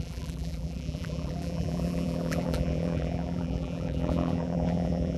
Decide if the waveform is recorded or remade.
remade